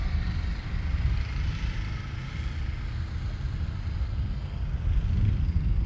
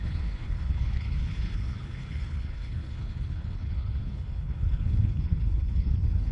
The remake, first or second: second